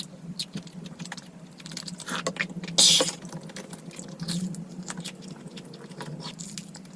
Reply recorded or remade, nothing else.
recorded